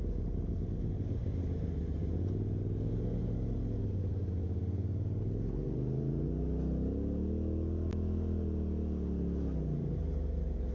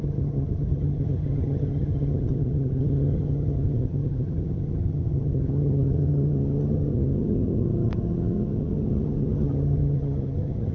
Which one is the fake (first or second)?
second